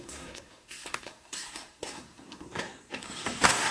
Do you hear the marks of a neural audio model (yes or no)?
yes